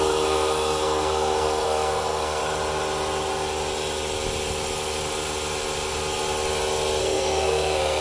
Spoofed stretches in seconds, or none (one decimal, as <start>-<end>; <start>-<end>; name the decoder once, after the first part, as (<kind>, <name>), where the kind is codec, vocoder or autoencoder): 0.0-2.4 (codec, SNAC); 7.0-8.0

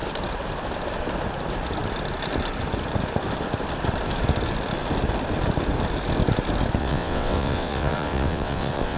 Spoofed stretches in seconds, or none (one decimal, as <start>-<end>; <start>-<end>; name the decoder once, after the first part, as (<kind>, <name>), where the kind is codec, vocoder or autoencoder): 6.8-9.0 (vocoder, WaveNeXt)